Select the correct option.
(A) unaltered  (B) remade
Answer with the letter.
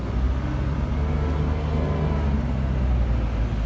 A